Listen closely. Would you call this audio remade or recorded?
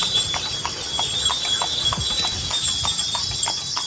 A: recorded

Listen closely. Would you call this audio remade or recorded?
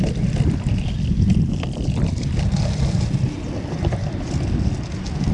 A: recorded